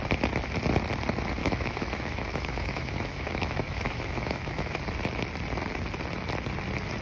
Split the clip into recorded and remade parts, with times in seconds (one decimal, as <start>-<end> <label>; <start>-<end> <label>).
0.0-1.4 recorded; 1.4-4.8 remade; 4.8-7.0 recorded